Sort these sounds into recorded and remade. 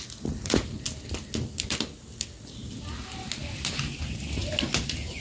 recorded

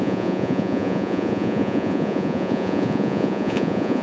remade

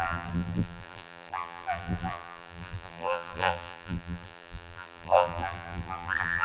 remade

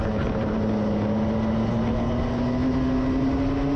recorded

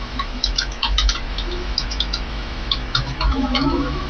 remade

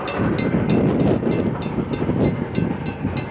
recorded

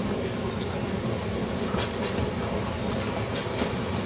recorded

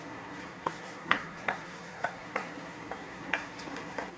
remade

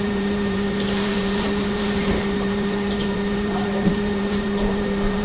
remade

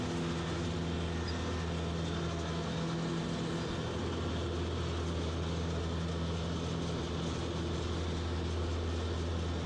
recorded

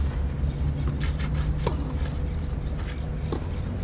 recorded